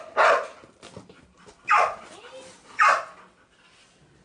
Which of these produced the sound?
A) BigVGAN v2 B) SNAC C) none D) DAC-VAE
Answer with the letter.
C